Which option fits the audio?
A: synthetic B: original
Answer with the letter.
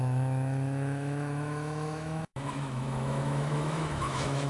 A